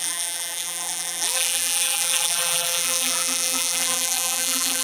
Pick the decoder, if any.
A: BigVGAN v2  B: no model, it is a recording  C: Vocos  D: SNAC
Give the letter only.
A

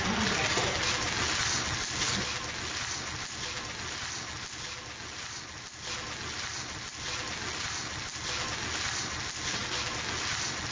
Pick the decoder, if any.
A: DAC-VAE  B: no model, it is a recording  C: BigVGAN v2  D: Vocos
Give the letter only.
B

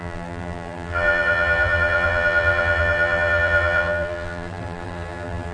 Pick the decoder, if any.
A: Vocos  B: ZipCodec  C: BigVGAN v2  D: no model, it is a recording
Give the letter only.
C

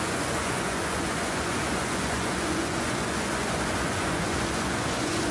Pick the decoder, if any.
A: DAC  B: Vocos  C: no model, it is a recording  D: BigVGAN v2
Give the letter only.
B